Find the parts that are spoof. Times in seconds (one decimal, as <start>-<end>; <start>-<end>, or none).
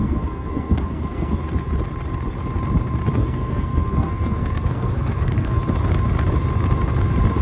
0.0-1.4; 3.2-5.6